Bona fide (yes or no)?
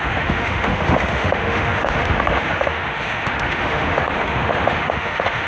no